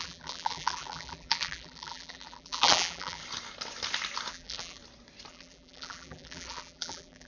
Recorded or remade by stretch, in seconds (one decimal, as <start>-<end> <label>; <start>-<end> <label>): 0.0-3.2 remade; 3.2-4.3 recorded; 4.3-4.8 remade; 4.8-5.3 recorded; 5.3-7.3 remade